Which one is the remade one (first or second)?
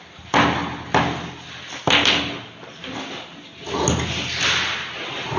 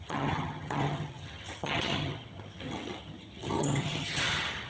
second